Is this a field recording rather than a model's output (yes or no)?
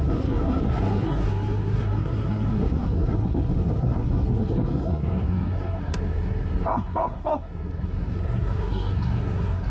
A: no